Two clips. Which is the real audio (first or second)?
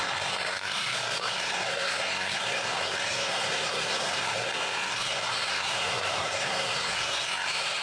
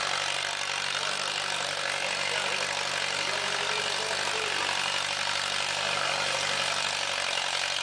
second